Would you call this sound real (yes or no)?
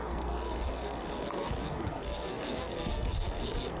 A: no